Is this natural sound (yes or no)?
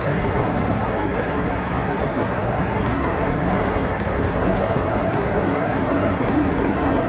no